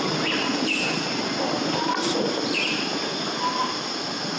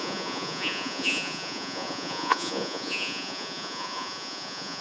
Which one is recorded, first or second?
first